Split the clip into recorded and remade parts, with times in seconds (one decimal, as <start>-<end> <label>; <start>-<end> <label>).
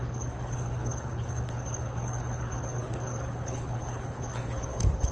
0.0-5.1 remade